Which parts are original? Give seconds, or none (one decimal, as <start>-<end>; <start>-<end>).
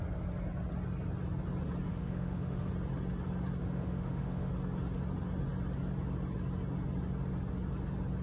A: 0.0-1.9; 2.7-3.6; 4.5-8.2